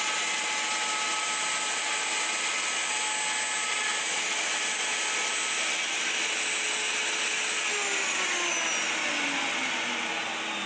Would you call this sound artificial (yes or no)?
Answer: no